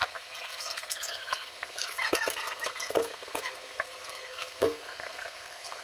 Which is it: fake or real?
fake